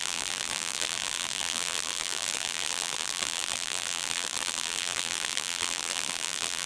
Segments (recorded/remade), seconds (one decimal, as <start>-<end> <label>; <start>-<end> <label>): 0.0-6.7 remade